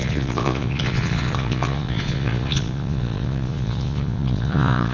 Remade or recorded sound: remade